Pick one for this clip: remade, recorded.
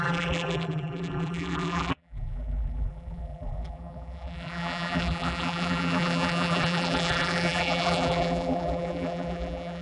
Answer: remade